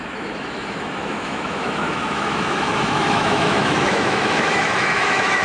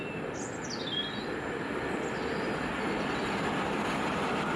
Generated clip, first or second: first